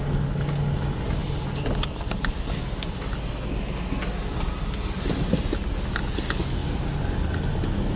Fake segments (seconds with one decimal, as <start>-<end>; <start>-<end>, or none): none